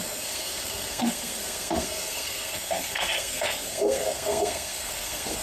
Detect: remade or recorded remade